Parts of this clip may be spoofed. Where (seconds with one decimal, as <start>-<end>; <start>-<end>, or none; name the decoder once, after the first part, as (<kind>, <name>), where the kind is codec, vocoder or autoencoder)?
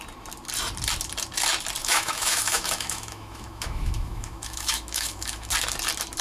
1.8-5.5 (autoencoder, DAC-VAE)